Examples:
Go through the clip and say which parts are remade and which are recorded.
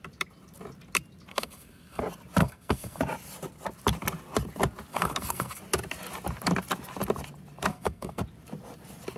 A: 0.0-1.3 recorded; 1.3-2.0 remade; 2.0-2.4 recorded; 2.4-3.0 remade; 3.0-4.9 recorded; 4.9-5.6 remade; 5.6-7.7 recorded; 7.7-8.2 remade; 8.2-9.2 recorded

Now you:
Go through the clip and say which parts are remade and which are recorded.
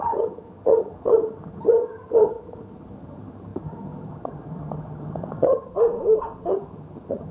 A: 0.0-5.7 remade; 5.7-6.5 recorded; 6.5-7.3 remade